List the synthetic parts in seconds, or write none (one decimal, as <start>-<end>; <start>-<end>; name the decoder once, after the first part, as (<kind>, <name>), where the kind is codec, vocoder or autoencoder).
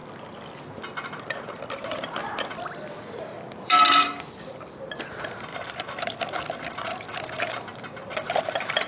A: 0.0-3.8 (vocoder, BigVGAN v2); 5.5-6.2; 6.9-8.4